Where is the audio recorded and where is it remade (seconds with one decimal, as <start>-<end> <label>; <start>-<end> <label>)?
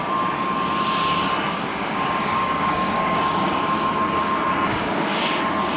0.0-1.7 recorded; 1.7-3.6 remade; 3.6-4.7 recorded; 4.7-5.3 remade; 5.3-5.8 recorded